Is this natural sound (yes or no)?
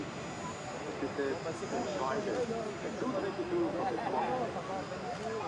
yes